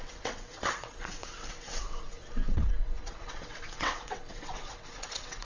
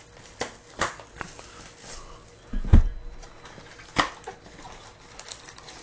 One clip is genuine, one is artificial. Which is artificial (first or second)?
first